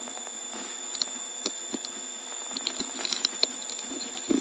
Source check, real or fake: fake